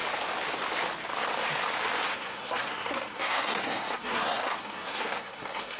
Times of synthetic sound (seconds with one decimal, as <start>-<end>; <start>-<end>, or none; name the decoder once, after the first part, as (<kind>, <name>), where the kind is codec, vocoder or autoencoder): 2.1-5.8 (codec, SNAC)